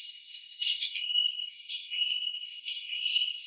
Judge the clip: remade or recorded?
remade